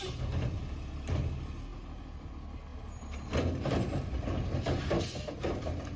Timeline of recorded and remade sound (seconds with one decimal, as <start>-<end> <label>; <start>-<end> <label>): 0.0-6.0 recorded